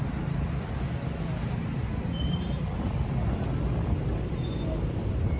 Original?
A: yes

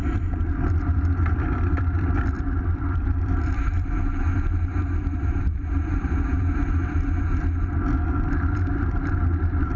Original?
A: no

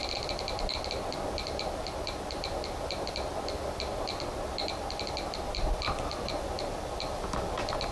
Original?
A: yes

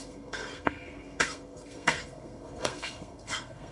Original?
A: no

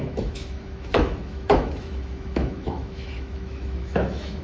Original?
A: no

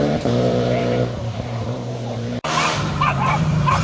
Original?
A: no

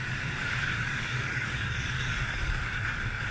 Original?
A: no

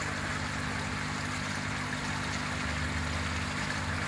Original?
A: yes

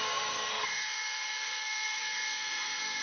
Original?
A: no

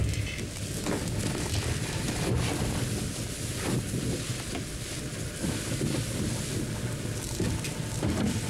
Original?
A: yes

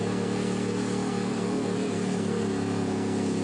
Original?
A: no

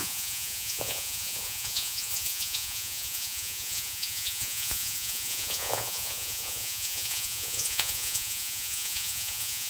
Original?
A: no